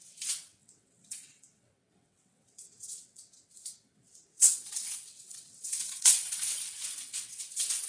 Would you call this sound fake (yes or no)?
yes